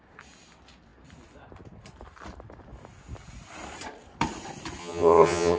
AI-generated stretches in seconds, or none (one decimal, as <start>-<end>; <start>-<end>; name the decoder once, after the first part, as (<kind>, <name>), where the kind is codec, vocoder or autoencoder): 4.8-5.6 (vocoder, HiFi-GAN)

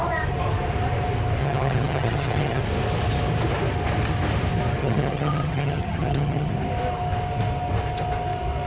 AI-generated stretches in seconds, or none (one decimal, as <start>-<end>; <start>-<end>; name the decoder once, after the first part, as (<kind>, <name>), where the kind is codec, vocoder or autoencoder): 1.4-2.6 (vocoder, HiFi-GAN); 4.8-6.5

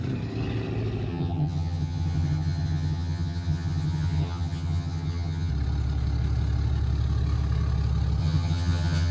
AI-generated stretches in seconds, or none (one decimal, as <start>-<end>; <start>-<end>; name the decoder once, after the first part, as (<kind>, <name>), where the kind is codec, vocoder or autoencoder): 1.1-5.5 (vocoder, HiFi-GAN); 8.2-9.1

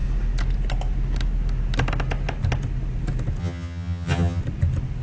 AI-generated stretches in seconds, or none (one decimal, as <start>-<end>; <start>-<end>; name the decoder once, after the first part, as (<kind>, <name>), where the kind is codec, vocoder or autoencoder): 3.4-4.4 (vocoder, HiFi-GAN)

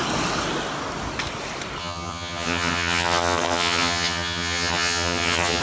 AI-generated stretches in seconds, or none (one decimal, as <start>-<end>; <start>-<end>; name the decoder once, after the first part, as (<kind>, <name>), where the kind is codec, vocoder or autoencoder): 1.8-5.6 (vocoder, HiFi-GAN)

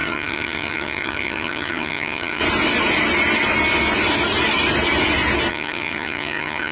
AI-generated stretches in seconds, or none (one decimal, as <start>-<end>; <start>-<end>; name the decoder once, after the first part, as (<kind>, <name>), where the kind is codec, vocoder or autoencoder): 0.0-2.4 (vocoder, HiFi-GAN); 5.5-6.7

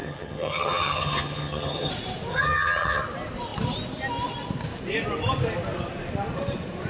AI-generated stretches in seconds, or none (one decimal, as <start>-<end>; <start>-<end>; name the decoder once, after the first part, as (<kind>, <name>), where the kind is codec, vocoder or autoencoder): 0.0-1.9 (vocoder, HiFi-GAN); 2.3-3.0